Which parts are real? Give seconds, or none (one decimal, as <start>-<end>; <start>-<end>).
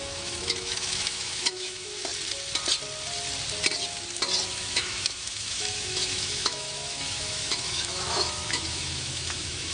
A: 2.1-4.5